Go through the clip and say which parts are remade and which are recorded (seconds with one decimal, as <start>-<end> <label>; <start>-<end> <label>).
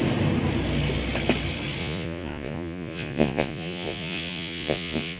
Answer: 0.0-1.8 recorded; 1.8-5.2 remade